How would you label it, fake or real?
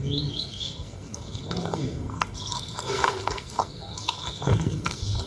fake